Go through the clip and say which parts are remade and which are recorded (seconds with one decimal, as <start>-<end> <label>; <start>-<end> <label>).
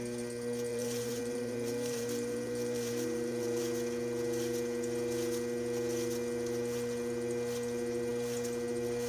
0.0-0.7 recorded; 0.7-3.6 remade; 3.6-9.1 recorded